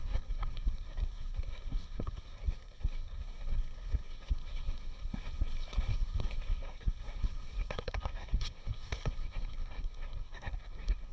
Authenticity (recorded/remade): remade